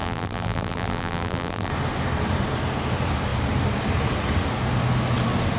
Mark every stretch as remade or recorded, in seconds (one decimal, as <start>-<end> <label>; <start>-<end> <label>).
0.0-1.7 remade; 1.7-5.6 recorded